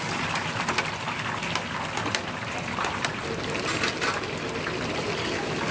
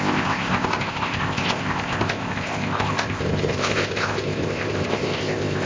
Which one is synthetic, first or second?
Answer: second